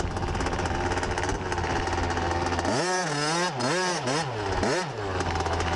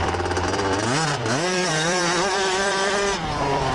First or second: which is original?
first